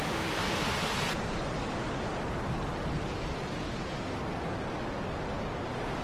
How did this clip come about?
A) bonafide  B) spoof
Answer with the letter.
A